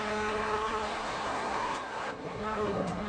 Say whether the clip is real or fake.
fake